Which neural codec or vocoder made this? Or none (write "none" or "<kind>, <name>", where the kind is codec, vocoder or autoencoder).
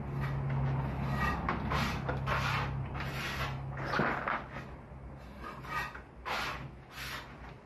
none